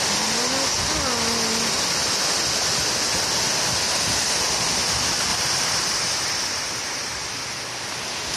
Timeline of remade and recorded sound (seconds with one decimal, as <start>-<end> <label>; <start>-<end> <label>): 0.0-5.3 recorded; 5.3-7.6 remade; 7.6-8.4 recorded